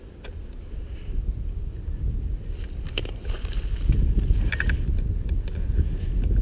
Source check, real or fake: real